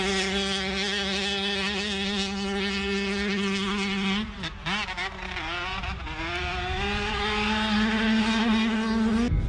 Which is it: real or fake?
real